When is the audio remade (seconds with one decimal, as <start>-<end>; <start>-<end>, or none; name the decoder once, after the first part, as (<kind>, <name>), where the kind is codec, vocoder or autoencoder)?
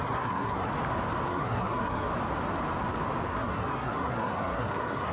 0.0-0.7 (codec, SNAC); 1.3-2.1; 3.3-5.1